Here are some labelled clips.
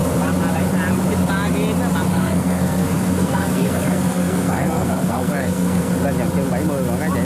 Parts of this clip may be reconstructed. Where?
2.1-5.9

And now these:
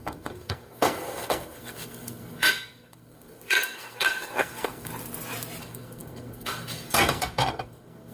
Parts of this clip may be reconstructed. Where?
0.0-4.9; 5.6-8.1

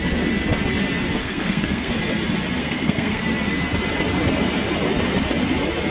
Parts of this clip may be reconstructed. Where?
1.2-1.9; 2.6-3.2

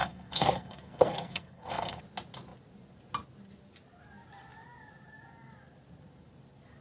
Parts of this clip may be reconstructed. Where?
0.0-2.0

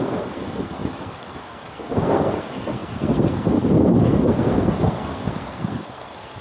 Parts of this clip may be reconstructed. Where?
0.0-6.4

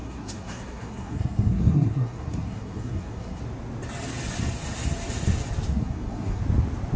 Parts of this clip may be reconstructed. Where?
0.0-3.4; 5.7-6.4